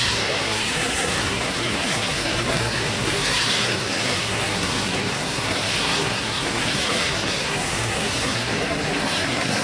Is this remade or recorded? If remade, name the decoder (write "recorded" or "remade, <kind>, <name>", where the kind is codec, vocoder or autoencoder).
remade, codec, SNAC